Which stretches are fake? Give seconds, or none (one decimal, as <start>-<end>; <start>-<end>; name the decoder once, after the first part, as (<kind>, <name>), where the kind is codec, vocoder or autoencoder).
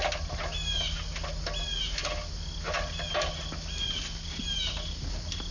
none